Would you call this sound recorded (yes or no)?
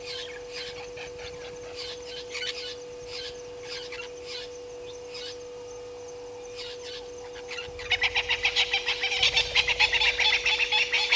yes